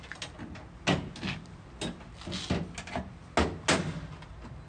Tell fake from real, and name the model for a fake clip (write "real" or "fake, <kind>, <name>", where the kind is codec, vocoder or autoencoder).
real